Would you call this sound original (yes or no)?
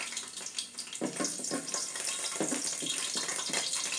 yes